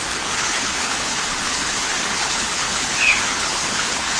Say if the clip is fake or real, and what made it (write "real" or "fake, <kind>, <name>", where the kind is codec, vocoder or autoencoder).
fake, codec, HILCodec